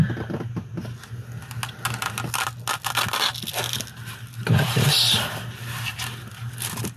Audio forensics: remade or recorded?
recorded